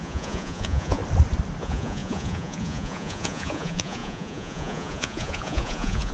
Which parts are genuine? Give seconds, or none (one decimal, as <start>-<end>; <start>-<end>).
1.0-1.6